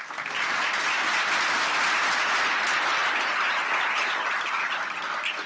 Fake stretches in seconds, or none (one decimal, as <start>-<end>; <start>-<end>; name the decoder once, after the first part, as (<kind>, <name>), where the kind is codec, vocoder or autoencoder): none